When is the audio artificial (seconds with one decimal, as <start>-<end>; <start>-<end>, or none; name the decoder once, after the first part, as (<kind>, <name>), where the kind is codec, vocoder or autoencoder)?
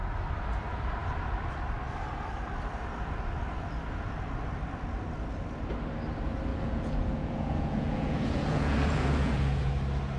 6.5-9.7 (vocoder, Vocos)